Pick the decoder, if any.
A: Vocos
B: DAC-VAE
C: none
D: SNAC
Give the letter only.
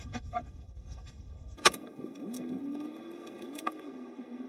D